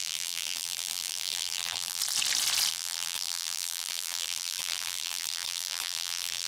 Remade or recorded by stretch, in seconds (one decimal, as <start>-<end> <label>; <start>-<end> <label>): 0.0-2.0 remade; 2.0-2.7 recorded; 2.7-6.5 remade

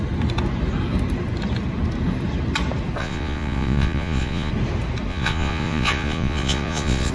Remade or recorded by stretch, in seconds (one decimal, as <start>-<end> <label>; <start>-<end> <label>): 0.0-3.0 recorded; 3.0-4.5 remade; 4.5-5.1 recorded; 5.1-7.1 remade

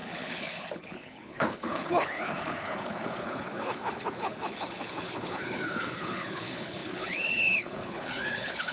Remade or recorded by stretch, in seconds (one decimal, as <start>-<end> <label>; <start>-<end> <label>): 0.0-8.7 remade

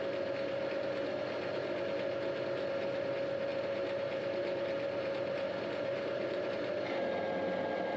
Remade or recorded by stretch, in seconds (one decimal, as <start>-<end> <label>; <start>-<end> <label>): 0.0-3.5 recorded; 3.5-6.5 remade; 6.5-8.0 recorded

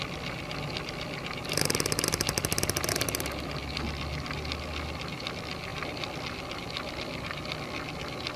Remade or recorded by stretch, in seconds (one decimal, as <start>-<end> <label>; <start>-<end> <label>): 0.0-8.4 recorded

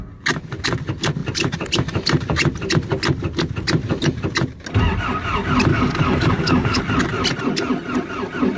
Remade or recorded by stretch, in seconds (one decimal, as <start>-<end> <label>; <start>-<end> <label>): 0.0-5.7 recorded; 5.7-6.8 remade; 6.8-8.6 recorded

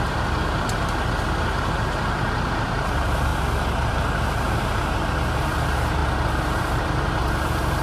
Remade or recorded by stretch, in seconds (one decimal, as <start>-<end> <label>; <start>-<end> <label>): 0.0-3.3 remade; 3.3-3.9 recorded; 3.9-6.0 remade; 6.0-6.6 recorded; 6.6-7.8 remade

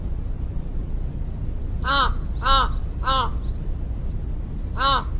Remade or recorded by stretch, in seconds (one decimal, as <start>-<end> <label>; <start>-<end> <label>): 0.0-5.2 recorded